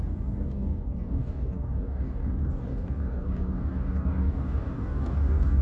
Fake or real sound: fake